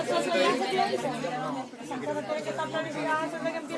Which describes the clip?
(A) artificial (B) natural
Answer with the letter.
B